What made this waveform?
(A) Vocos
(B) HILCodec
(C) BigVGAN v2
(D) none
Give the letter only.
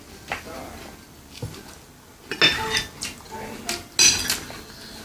D